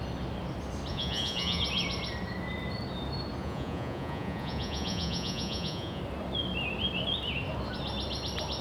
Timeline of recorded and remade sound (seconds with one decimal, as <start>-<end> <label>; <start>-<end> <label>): 0.0-0.9 recorded; 0.9-1.6 remade; 1.6-3.4 recorded; 3.4-6.0 remade; 6.0-8.6 recorded